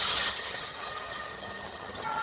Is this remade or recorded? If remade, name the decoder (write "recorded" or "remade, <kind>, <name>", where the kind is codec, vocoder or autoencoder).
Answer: remade, vocoder, HiFi-GAN